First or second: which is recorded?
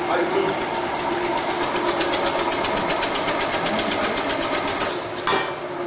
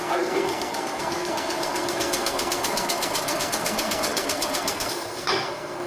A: first